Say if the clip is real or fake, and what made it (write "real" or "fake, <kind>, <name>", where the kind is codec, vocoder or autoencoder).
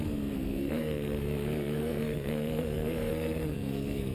fake, codec, SNAC